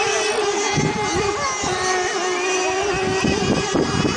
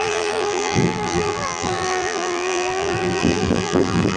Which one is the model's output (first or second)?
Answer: second